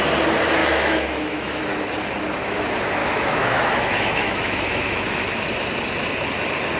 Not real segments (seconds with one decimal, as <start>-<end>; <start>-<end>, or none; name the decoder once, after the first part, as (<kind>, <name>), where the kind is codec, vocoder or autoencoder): 0.6-1.6 (autoencoder, DAC-VAE); 3.0-5.5